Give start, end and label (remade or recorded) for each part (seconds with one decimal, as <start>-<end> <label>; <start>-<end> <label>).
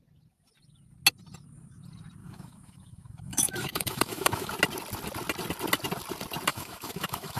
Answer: 0.0-2.2 recorded; 2.2-4.5 remade; 4.5-6.5 recorded; 6.5-7.4 remade